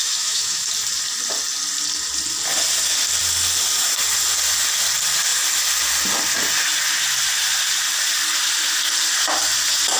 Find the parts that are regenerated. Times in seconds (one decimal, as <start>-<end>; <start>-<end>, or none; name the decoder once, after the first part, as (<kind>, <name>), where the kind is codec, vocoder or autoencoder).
0.0-0.7 (autoencoder, DAC-VAE)